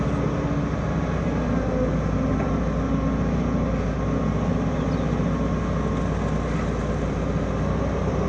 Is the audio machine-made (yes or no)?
no